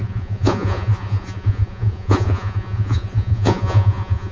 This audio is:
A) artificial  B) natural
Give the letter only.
A